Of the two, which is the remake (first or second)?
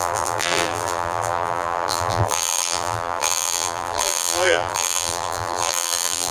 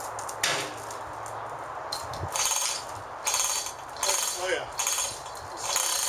first